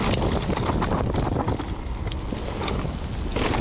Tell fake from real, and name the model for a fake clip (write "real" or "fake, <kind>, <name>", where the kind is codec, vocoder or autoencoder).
real